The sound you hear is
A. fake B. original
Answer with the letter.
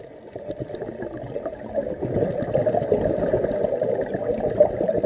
B